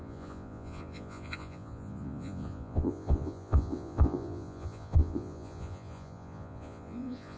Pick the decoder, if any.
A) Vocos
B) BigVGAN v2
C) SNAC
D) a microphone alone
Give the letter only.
A